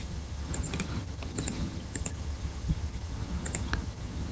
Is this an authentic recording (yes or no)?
no